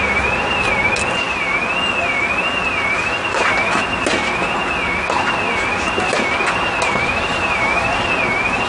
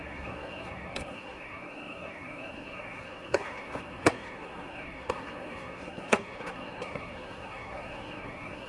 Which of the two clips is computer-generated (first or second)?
second